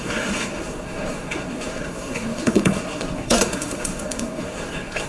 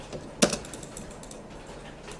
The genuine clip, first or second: second